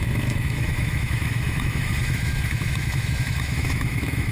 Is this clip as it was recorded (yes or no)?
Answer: no